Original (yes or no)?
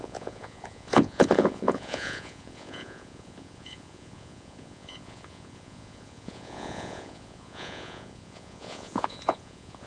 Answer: no